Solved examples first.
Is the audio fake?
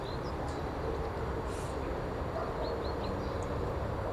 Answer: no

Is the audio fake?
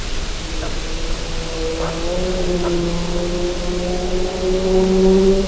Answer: no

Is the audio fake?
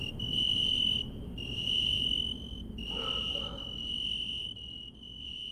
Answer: no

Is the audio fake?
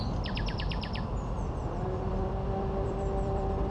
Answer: yes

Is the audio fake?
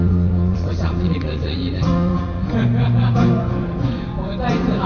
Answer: yes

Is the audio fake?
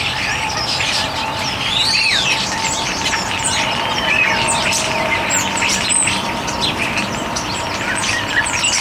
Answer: yes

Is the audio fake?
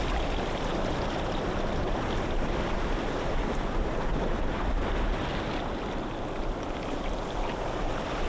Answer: no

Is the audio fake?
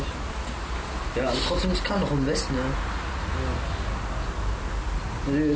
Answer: no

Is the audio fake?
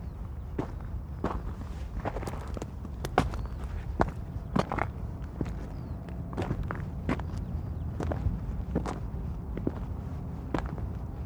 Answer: no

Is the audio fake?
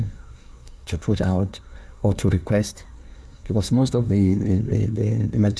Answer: yes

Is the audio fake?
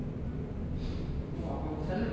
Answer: no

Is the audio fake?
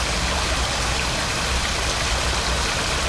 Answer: no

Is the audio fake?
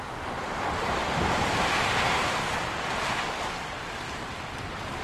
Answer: no